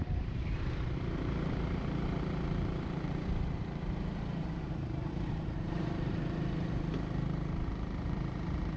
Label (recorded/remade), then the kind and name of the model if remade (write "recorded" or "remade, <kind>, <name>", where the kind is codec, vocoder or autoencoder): remade, vocoder, BigVGAN v2